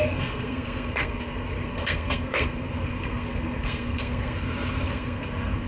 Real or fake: fake